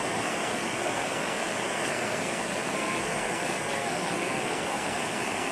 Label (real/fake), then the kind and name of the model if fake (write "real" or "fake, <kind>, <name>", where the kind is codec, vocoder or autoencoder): fake, codec, SNAC